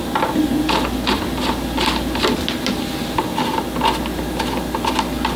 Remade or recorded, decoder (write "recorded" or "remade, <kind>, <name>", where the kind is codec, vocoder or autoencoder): recorded